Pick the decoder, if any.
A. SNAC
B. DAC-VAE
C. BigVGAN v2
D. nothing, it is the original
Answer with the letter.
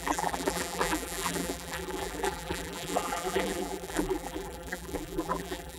C